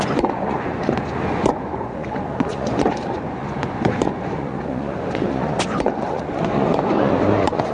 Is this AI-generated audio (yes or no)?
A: yes